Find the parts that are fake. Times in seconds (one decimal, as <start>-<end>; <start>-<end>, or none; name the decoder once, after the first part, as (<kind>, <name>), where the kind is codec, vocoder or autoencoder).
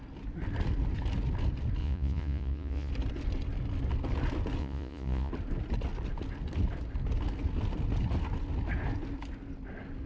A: 1.8-2.9 (vocoder, Vocos); 4.6-5.3